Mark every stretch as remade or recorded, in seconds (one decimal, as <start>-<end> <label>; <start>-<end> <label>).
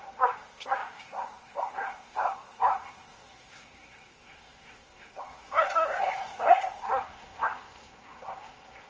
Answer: 0.0-8.9 remade